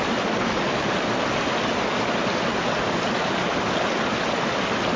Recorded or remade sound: recorded